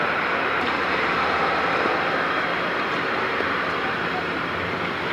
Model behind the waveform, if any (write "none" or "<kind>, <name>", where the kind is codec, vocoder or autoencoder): vocoder, BigVGAN v2